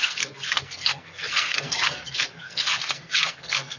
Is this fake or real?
fake